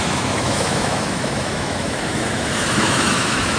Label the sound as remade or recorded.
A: remade